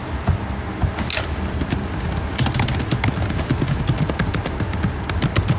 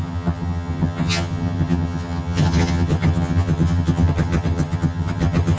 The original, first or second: first